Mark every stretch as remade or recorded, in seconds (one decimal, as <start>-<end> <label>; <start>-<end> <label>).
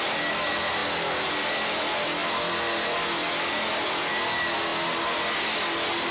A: 0.0-2.2 recorded; 2.2-3.7 remade; 3.7-6.1 recorded